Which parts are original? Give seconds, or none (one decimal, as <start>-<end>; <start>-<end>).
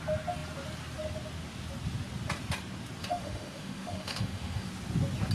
0.0-3.0; 4.7-5.3